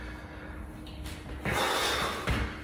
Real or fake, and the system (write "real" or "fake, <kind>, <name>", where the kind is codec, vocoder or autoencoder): real